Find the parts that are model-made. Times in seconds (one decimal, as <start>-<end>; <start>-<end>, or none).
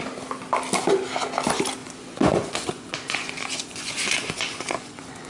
1.8-5.3